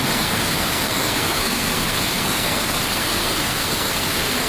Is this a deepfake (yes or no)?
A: yes